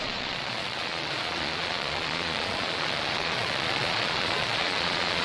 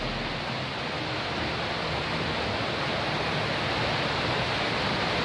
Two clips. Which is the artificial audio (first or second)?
first